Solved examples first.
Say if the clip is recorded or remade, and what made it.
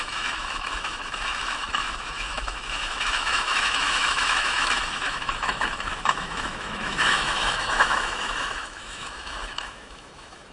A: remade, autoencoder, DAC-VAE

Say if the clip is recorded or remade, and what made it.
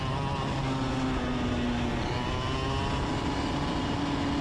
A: recorded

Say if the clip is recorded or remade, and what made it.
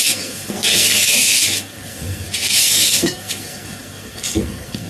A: remade, codec, SNAC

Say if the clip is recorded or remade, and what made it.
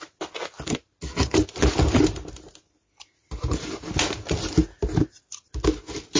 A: recorded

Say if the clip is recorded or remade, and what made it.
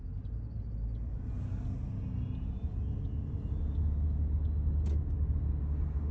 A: recorded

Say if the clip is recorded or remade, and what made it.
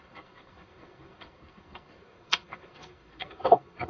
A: remade, codec, SNAC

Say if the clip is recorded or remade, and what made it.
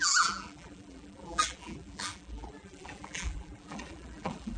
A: remade, vocoder, BigVGAN v2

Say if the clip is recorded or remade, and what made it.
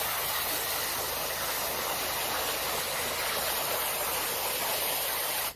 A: recorded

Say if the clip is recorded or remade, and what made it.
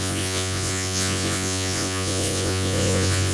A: remade, vocoder, Vocos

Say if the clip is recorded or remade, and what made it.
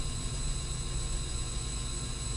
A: remade, vocoder, Vocos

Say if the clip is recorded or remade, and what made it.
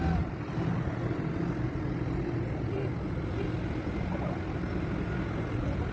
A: recorded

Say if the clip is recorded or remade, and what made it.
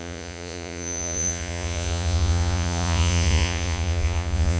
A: remade, vocoder, Vocos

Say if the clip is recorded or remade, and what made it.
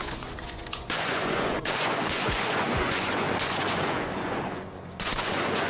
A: remade, vocoder, Vocos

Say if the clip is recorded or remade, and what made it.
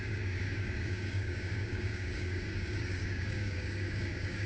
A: remade, codec, DAC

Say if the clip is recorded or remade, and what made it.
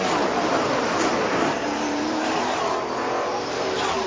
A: remade, vocoder, BigVGAN v2